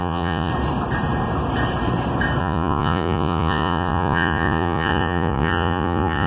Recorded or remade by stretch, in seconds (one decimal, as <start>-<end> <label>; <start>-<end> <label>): 0.0-0.5 remade; 0.5-2.4 recorded; 2.4-6.3 remade